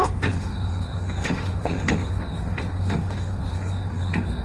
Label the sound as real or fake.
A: fake